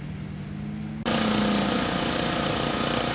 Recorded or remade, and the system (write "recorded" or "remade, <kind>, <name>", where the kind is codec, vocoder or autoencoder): recorded